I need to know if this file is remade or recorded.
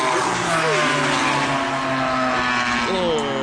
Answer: recorded